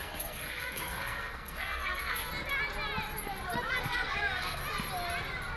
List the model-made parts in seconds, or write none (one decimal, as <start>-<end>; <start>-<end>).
0.0-2.3; 3.8-4.6

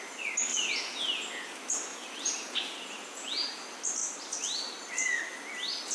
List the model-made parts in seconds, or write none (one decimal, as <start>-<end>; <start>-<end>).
0.5-1.0; 1.9-3.5

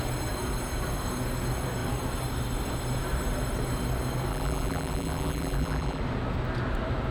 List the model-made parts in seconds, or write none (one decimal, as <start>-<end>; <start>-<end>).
4.3-6.0

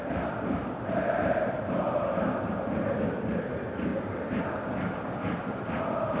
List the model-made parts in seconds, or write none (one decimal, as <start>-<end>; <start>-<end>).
3.9-4.4

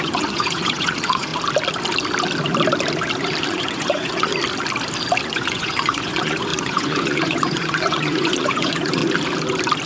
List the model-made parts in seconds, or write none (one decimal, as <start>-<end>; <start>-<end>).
0.0-1.3; 3.5-4.3; 5.2-9.0

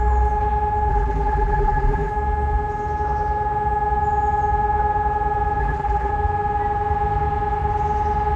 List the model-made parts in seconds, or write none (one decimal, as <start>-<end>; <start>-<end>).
0.9-2.1; 5.6-6.1

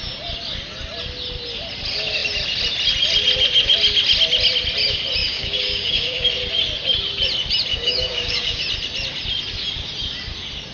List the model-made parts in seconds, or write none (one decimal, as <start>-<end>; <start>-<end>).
5.2-6.3; 7.7-8.6